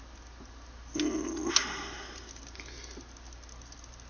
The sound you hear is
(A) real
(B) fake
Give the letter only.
A